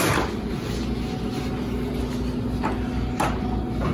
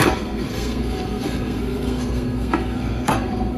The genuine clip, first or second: first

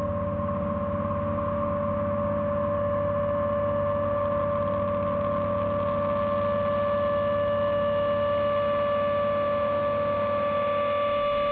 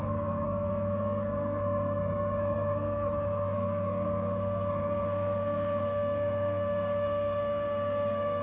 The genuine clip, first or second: first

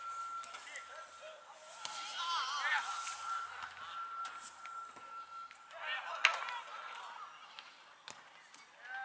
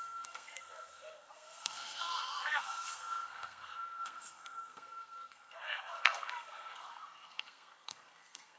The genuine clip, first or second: first